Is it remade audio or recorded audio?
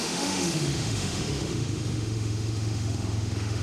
remade